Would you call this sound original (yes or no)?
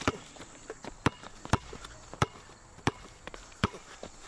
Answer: yes